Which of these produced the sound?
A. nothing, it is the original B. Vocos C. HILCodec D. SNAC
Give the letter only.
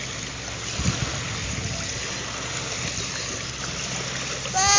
A